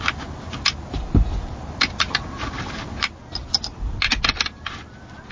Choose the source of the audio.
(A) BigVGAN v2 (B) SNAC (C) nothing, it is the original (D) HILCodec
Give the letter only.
C